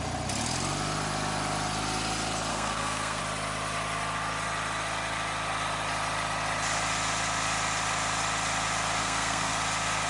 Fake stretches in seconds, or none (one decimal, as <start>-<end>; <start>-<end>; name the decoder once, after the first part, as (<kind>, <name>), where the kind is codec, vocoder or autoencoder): 2.5-3.2 (codec, SNAC); 9.0-9.5